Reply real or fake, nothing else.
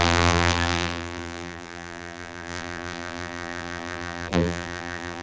fake